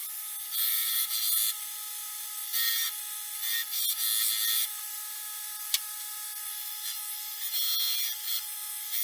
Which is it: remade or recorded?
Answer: recorded